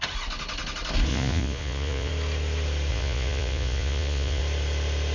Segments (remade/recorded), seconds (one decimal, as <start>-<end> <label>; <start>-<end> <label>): 0.0-1.1 recorded; 1.1-2.1 remade; 2.1-2.9 recorded; 2.9-4.4 remade; 4.4-5.1 recorded